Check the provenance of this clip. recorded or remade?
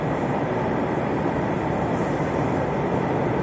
remade